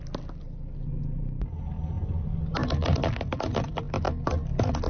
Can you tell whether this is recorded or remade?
recorded